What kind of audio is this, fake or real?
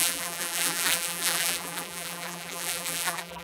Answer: fake